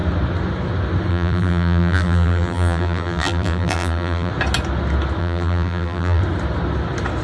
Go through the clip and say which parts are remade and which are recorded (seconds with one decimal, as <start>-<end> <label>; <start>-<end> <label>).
0.0-1.1 recorded; 1.1-4.3 remade; 4.3-5.2 recorded; 5.2-6.2 remade; 6.2-7.2 recorded